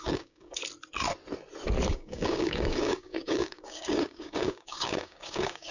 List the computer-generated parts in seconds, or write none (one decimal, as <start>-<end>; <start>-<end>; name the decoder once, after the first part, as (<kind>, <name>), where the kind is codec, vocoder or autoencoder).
0.0-0.6 (codec, DAC); 1.9-5.7